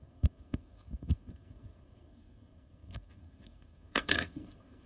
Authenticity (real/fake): fake